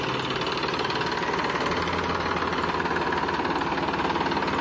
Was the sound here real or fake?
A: real